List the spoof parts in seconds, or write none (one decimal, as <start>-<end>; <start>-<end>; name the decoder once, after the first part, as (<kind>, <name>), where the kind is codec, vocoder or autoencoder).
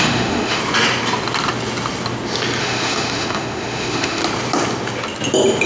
0.0-0.6 (autoencoder, DAC-VAE); 2.6-4.2